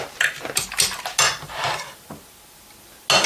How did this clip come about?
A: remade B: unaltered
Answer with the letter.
B